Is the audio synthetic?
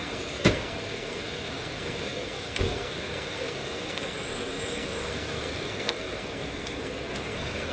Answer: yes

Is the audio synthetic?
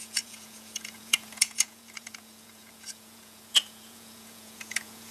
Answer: yes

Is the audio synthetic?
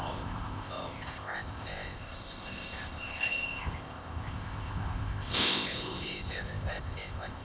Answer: yes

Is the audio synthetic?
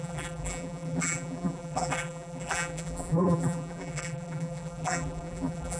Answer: yes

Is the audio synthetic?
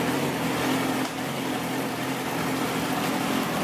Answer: no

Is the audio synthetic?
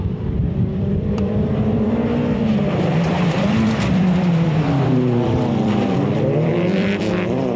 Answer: yes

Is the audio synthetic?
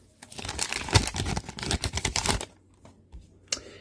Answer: no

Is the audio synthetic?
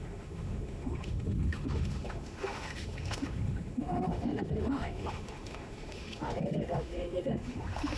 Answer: yes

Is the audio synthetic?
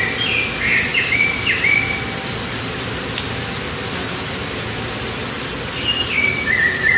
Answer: no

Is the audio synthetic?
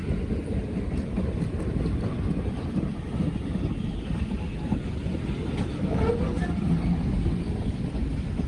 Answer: no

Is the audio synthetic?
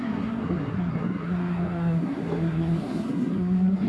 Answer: yes